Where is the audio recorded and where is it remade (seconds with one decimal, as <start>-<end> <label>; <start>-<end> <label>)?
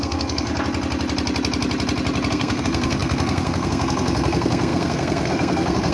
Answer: 0.0-0.5 remade; 0.5-2.3 recorded; 2.3-5.9 remade